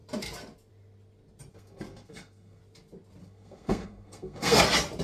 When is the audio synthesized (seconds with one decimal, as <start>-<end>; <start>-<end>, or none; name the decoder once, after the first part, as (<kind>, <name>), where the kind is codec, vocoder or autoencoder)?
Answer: 1.5-2.6 (codec, SNAC); 3.2-4.6